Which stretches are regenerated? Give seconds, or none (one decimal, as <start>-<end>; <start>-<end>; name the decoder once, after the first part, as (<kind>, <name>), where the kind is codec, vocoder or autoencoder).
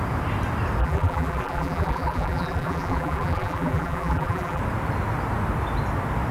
0.8-4.6 (vocoder, BigVGAN v2)